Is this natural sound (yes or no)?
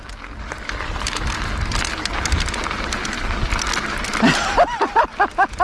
yes